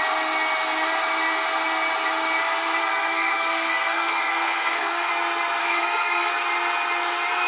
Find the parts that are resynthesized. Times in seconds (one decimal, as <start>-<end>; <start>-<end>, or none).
2.8-5.1; 5.6-6.3